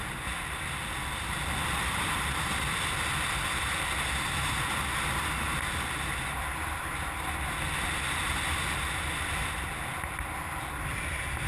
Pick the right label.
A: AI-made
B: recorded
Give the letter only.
B